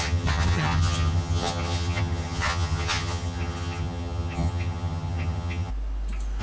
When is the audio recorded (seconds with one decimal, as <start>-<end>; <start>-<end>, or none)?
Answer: 5.7-6.4